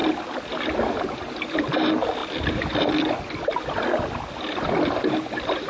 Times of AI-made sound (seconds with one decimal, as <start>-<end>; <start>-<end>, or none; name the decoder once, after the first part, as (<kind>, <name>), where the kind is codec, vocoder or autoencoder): none